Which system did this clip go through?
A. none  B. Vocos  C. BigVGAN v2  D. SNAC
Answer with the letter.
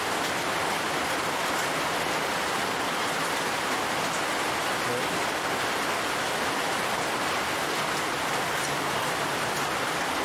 A